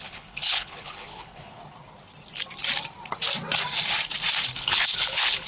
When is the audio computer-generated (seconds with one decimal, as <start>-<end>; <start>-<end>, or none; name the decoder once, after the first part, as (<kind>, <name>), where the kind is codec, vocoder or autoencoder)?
0.0-1.6 (codec, HILCodec); 4.6-5.5